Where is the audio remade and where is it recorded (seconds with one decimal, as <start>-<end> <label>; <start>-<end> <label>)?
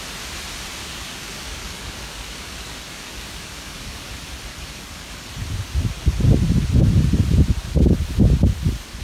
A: 0.0-0.8 recorded; 0.8-4.1 remade; 4.1-4.5 recorded; 4.5-5.3 remade; 5.3-9.0 recorded